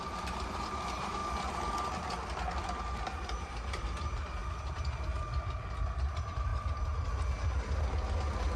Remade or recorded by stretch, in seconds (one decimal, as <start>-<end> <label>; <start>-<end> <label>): 0.0-1.2 remade; 1.2-3.4 recorded; 3.4-4.4 remade; 4.4-6.0 recorded; 6.0-6.5 remade; 6.5-8.6 recorded